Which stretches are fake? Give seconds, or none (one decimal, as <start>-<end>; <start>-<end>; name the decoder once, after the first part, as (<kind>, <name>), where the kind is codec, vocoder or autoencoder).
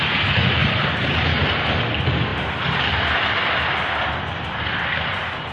0.6-1.8 (vocoder, BigVGAN v2)